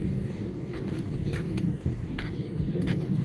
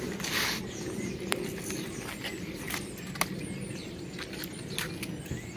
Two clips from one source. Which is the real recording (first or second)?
second